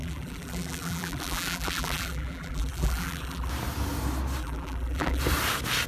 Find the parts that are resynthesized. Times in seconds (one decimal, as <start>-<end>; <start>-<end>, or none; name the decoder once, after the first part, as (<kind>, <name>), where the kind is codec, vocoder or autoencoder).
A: 0.0-3.5 (vocoder, BigVGAN v2); 4.4-5.2

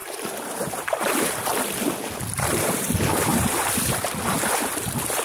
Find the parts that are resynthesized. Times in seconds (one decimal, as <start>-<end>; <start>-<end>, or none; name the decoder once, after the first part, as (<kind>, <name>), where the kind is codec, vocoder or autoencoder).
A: 0.0-2.9 (vocoder, BigVGAN v2); 3.3-4.6

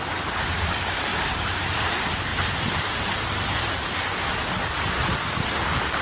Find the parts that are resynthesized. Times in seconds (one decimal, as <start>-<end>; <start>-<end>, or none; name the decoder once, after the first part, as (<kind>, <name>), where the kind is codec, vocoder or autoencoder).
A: 1.1-1.8 (vocoder, BigVGAN v2); 2.3-2.8